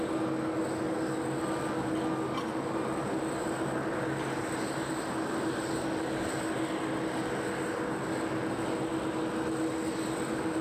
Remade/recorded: recorded